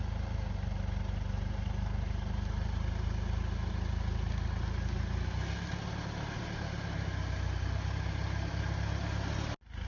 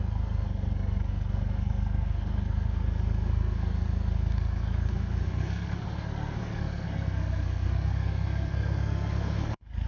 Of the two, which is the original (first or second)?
first